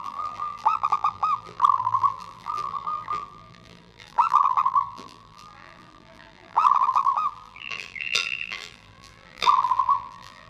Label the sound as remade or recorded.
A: remade